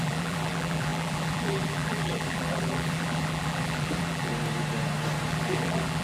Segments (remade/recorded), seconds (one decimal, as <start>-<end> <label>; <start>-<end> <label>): 0.0-4.3 remade; 4.3-5.3 recorded; 5.3-6.0 remade